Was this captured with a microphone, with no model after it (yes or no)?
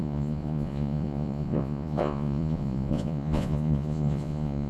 no